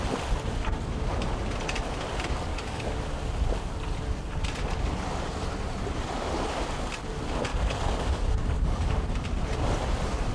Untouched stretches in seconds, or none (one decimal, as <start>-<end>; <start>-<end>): 0.0-2.5; 3.0-7.5; 9.0-10.3